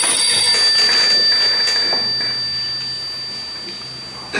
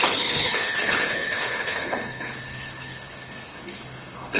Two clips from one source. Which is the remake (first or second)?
second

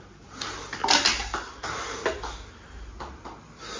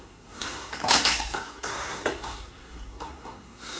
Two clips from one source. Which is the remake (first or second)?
second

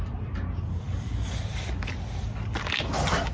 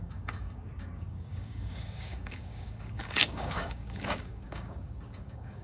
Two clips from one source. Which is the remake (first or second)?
second